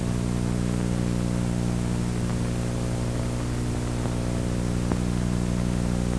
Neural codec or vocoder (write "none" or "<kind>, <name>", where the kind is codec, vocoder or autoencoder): none